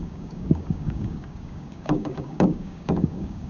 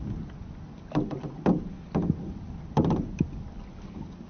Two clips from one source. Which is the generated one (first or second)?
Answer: first